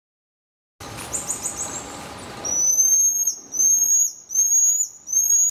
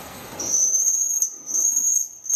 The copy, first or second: second